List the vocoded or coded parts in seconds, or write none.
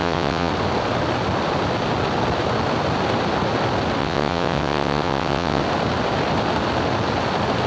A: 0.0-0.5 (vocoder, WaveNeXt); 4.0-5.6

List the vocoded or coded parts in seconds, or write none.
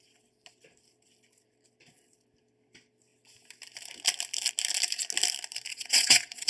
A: 5.7-6.5 (vocoder, WaveNeXt)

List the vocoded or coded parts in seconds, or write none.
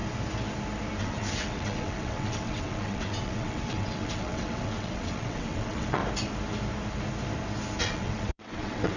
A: 1.0-6.0 (vocoder, WaveNeXt); 7.8-9.0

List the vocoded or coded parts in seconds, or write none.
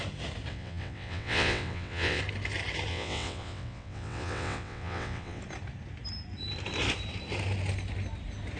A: 0.5-2.2 (vocoder, WaveNeXt); 2.9-5.4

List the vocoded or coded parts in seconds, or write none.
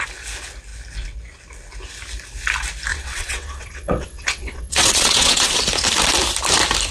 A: 2.9-5.6 (vocoder, WaveNeXt)